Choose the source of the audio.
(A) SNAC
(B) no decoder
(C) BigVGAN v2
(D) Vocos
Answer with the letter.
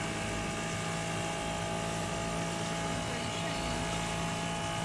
B